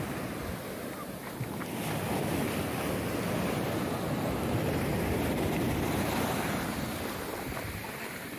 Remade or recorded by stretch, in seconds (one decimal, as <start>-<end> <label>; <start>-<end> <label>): 0.0-7.3 recorded; 7.3-7.8 remade; 7.8-8.4 recorded